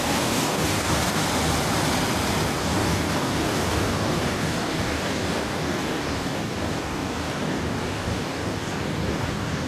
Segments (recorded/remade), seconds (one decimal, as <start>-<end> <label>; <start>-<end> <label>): 0.0-1.2 remade; 1.2-2.6 recorded; 2.6-9.7 remade